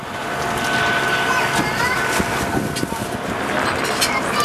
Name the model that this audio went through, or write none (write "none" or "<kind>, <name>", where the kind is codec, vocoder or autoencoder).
none